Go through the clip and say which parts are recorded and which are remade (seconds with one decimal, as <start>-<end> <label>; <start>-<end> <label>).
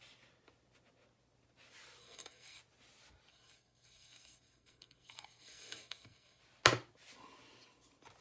0.0-2.0 recorded; 2.0-2.6 remade; 2.6-3.3 recorded; 3.3-6.4 remade; 6.4-8.2 recorded